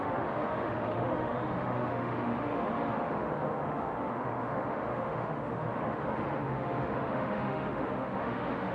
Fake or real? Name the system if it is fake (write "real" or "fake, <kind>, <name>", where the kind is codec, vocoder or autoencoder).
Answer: fake, autoencoder, DAC-VAE